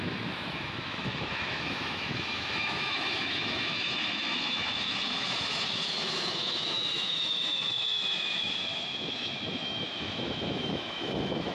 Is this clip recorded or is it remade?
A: remade